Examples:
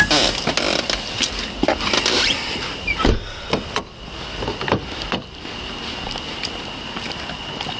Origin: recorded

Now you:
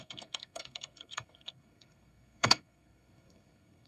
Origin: remade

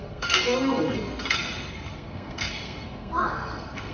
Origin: remade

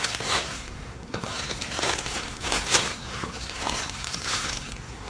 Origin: remade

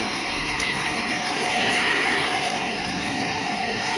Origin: remade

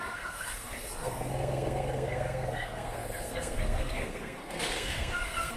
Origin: remade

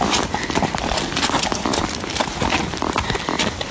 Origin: recorded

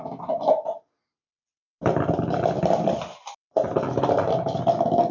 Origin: recorded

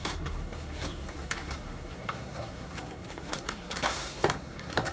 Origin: remade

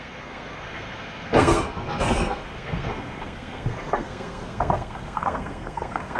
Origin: remade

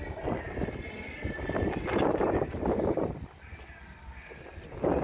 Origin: recorded